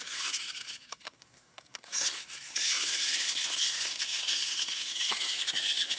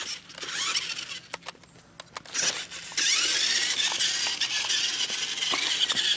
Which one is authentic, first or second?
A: second